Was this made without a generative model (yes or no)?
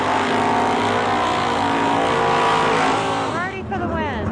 yes